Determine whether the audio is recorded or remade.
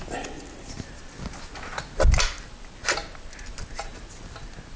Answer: recorded